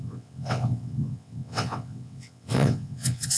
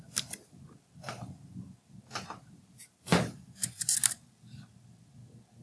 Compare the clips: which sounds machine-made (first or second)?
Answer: first